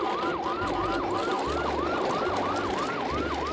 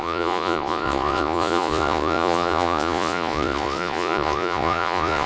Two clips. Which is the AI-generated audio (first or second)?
second